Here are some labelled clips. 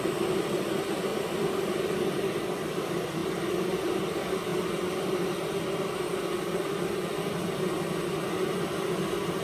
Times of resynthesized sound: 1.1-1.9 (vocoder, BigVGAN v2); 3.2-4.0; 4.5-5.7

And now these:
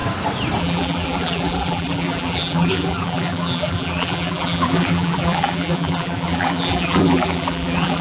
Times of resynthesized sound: 0.6-8.0 (vocoder, BigVGAN v2)

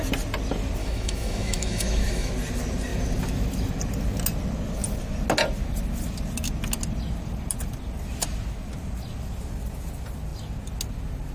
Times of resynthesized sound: 0.8-2.3 (autoencoder, DAC-VAE)

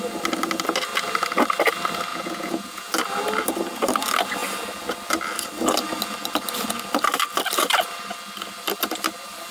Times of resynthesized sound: 2.1-2.9 (vocoder, Vocos)